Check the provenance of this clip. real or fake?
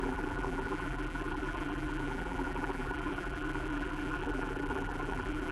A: fake